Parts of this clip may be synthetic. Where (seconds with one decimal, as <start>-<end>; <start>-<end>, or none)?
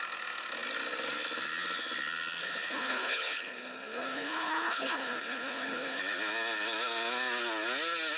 2.4-6.0